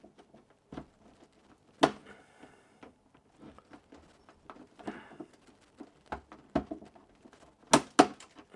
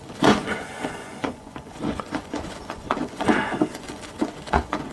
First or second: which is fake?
second